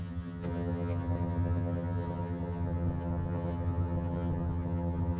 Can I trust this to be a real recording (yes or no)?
no